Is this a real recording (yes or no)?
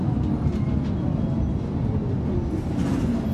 yes